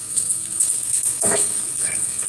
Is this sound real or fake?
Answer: fake